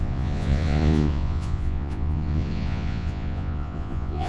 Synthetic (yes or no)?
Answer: yes